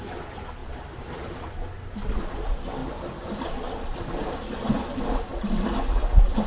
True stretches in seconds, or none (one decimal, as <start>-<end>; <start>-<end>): 0.0-6.5